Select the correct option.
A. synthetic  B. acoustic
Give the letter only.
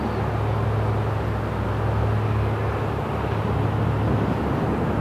B